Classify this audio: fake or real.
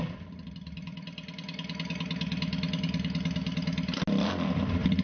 real